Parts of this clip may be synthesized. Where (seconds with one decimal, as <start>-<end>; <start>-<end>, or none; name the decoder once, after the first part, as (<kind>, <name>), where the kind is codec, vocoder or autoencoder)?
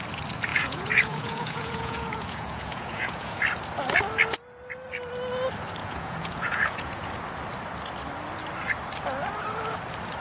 0.5-3.4 (vocoder, Vocos); 5.8-7.1